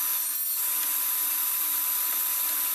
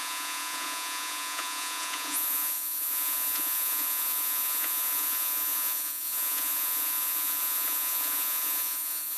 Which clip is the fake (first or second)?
second